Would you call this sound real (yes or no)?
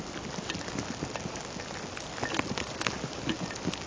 yes